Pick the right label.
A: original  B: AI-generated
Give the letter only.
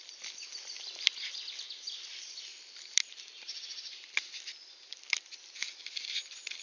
A